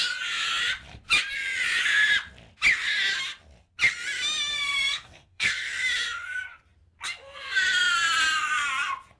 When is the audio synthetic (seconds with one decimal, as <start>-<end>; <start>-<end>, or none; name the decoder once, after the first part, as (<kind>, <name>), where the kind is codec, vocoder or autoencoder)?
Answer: 4.5-5.8 (codec, SNAC)